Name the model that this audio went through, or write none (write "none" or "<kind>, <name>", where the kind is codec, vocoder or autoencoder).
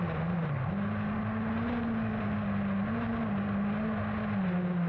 none